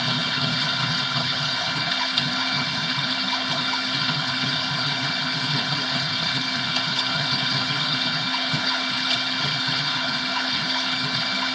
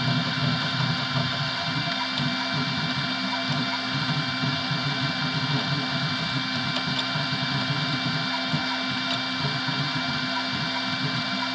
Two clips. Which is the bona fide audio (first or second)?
second